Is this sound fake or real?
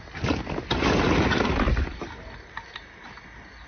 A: real